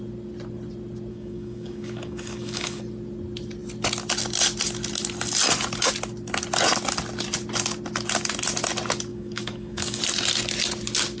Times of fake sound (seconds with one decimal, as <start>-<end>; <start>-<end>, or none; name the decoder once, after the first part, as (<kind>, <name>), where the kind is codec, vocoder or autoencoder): 1.1-2.8 (codec, DAC); 9.1-10.0

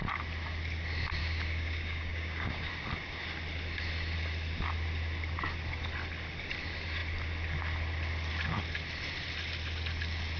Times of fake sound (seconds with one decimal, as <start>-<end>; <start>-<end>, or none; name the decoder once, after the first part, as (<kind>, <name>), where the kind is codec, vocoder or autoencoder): 1.2-2.7 (codec, DAC)

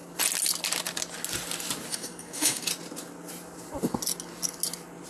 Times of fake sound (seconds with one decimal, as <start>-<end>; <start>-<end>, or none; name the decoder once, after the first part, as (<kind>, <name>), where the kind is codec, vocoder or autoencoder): 1.9-2.7 (codec, DAC)

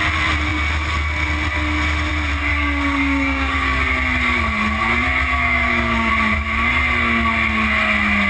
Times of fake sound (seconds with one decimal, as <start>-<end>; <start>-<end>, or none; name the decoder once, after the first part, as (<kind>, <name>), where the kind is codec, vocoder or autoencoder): 2.5-3.8 (codec, DAC); 5.4-6.1

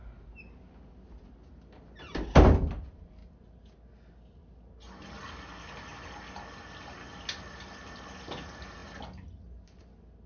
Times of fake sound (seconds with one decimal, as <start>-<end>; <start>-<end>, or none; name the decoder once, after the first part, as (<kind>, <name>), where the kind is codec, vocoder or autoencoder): none

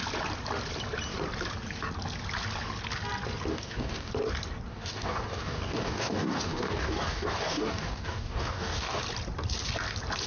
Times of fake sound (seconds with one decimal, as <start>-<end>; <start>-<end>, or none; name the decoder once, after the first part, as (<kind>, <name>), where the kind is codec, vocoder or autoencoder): 3.5-4.1 (codec, DAC); 4.7-9.0